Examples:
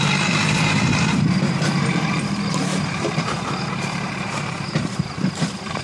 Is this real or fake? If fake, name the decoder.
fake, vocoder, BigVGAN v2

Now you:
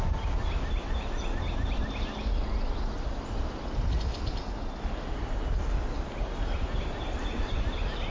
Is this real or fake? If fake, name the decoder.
real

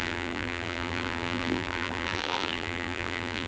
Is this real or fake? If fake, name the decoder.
fake, vocoder, BigVGAN v2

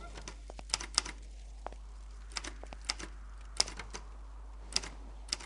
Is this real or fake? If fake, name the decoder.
real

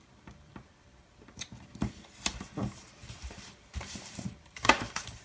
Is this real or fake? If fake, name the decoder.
fake, vocoder, BigVGAN v2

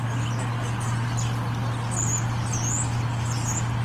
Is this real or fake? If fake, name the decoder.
real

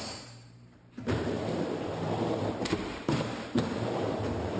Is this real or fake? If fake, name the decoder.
fake, vocoder, BigVGAN v2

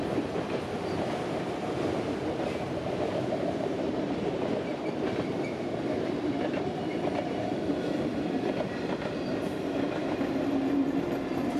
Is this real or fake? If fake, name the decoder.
fake, vocoder, BigVGAN v2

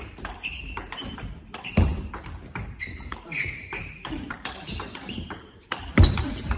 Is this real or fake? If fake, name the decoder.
fake, vocoder, BigVGAN v2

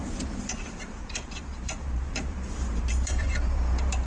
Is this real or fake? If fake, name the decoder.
fake, vocoder, BigVGAN v2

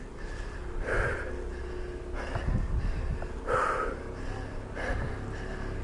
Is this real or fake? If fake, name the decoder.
real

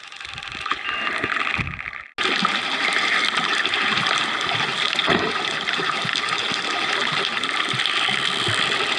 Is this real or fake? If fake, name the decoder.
real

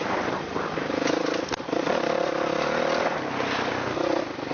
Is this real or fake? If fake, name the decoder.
fake, vocoder, BigVGAN v2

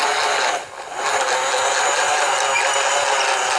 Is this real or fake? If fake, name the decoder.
real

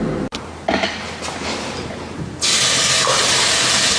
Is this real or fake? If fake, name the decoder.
real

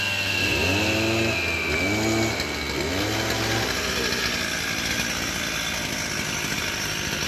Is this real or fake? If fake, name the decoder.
real